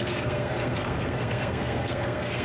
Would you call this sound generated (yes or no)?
yes